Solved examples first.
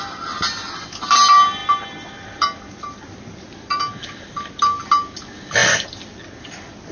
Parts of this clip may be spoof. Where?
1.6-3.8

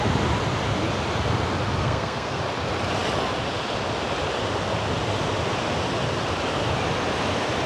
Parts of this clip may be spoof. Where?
1.8-2.4

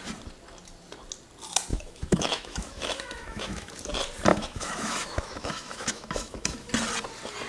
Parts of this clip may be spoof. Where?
1.7-3.7; 4.3-6.7